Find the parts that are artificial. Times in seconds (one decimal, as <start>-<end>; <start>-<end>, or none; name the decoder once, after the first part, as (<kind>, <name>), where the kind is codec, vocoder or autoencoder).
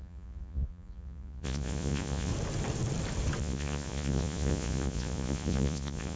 0.0-2.3 (vocoder, Vocos); 3.4-6.2